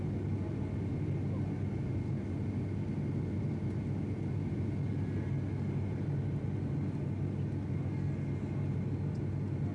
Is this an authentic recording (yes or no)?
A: yes